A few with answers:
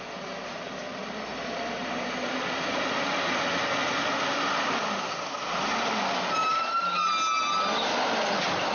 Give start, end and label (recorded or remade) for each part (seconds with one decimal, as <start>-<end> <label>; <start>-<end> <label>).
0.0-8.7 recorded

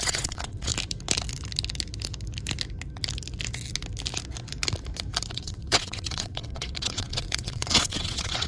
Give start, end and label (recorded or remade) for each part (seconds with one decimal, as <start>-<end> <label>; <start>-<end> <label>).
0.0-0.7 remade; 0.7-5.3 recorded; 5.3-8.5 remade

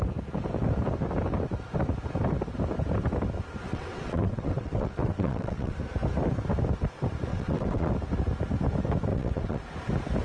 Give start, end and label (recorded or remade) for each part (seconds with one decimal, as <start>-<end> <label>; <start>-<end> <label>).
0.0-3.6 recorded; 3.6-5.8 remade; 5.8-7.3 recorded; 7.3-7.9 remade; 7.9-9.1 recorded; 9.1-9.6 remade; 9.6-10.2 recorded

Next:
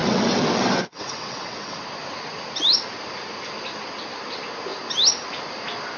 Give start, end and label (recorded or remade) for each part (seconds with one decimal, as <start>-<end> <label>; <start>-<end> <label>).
0.0-1.8 remade; 1.8-6.0 recorded

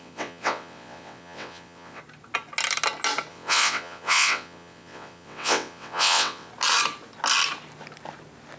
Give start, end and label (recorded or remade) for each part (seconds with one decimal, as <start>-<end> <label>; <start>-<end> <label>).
0.0-2.0 remade; 2.0-3.3 recorded; 3.3-6.5 remade; 6.5-8.6 recorded

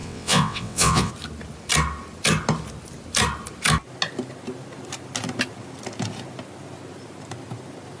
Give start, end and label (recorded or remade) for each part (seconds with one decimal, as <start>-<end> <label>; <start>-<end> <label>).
0.0-1.1 remade; 1.1-8.0 recorded

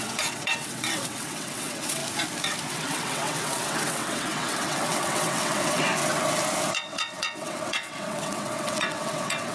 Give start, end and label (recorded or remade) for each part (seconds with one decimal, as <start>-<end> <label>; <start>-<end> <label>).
0.0-2.0 remade; 2.0-2.7 recorded; 2.7-6.0 remade; 6.0-6.7 recorded; 6.7-9.5 remade

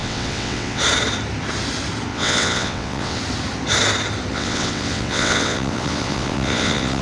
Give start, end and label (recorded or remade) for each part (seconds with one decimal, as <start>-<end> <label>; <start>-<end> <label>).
0.0-0.8 remade; 0.8-2.1 recorded; 2.1-3.2 remade; 3.2-4.3 recorded; 4.3-7.0 remade